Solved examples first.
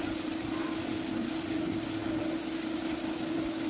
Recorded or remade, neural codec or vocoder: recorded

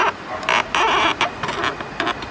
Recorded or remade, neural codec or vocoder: recorded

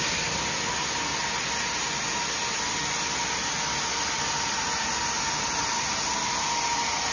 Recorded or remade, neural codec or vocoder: recorded